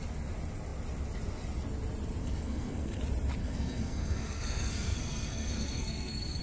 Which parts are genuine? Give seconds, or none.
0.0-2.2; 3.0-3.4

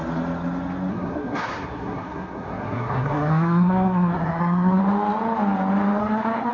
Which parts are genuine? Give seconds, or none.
0.0-0.9; 4.8-6.0